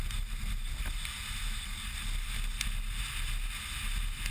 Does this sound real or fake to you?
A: real